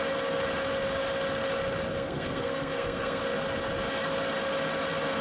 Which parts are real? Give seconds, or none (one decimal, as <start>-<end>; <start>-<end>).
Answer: 0.0-1.9; 3.2-5.2